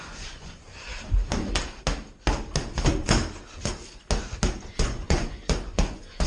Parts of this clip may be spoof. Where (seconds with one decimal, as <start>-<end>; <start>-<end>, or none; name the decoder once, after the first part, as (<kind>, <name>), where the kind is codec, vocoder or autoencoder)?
0.0-0.9 (vocoder, Vocos); 4.7-6.3